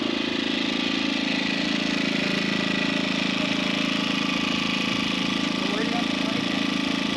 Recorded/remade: recorded